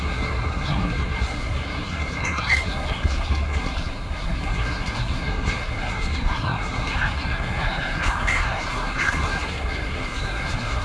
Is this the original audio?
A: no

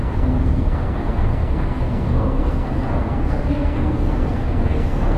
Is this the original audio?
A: no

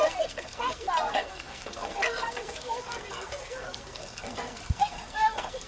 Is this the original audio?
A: no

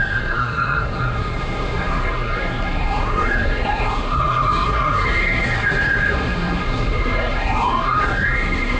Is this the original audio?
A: no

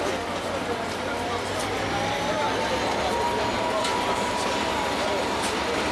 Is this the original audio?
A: yes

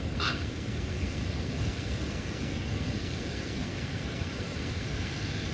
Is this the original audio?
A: no